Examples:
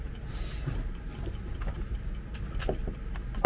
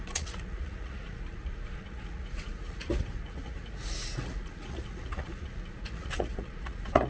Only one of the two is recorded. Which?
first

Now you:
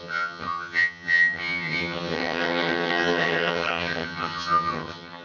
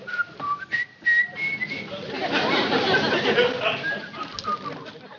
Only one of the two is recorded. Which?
second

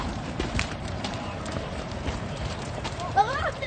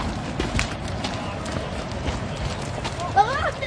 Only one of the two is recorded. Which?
second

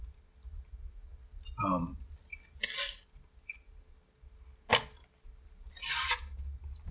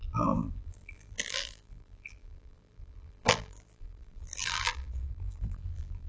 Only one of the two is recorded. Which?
first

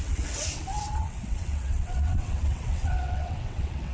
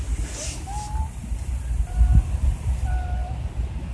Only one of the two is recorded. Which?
second